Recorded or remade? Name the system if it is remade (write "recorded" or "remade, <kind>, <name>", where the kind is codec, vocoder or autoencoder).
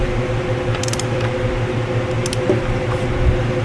recorded